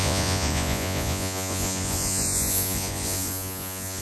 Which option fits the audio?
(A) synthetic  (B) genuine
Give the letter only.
A